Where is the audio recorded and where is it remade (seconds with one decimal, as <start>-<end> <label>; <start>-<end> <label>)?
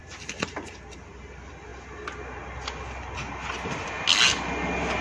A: 0.0-5.0 recorded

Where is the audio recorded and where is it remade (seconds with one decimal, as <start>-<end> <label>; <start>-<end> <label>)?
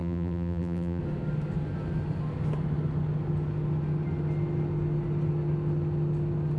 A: 0.0-1.0 remade; 1.0-6.6 recorded